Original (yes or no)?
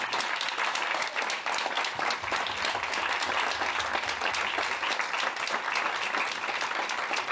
yes